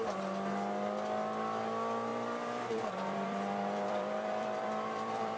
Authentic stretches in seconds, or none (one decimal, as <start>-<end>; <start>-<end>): 0.0-2.1